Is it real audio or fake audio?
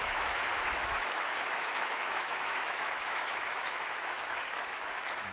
fake